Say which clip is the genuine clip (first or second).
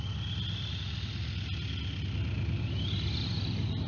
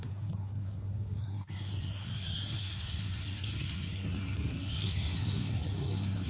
first